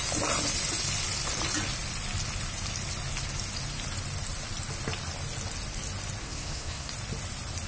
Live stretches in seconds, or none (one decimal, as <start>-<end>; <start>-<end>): 0.0-6.2; 6.9-7.7